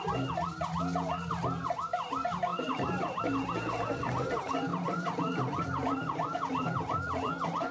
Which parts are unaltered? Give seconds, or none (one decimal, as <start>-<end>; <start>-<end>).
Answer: 0.0-2.5; 3.2-4.7; 7.3-7.7